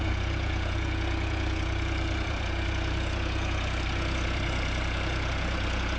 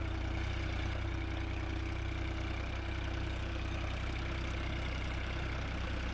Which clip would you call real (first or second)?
second